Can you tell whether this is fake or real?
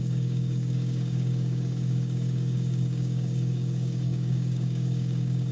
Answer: fake